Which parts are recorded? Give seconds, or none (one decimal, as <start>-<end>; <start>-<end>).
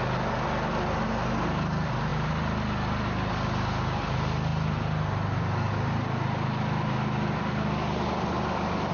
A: 0.0-8.9